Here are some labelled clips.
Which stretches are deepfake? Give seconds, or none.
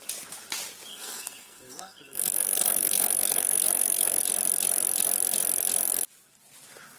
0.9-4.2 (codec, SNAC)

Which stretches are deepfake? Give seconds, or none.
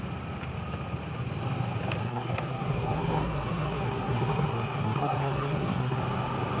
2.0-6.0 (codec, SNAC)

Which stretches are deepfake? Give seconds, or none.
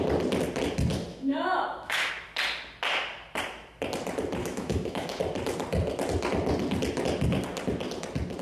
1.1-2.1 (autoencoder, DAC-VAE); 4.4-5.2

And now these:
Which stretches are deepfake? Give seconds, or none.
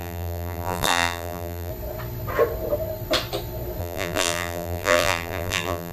0.0-1.7 (vocoder, BigVGAN v2); 3.8-5.9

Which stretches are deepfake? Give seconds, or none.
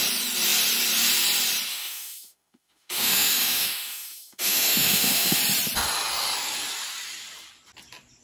1.7-5.4 (autoencoder, DAC-VAE)